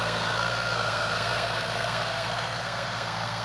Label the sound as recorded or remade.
remade